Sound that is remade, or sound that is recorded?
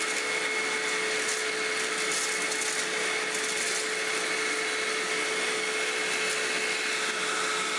recorded